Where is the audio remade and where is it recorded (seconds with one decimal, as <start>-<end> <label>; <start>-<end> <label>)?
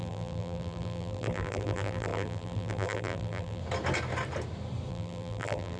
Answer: 0.0-3.6 remade; 3.6-4.9 recorded; 4.9-5.8 remade